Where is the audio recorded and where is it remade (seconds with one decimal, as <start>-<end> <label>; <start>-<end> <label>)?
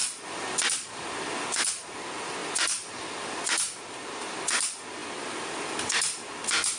0.0-6.8 recorded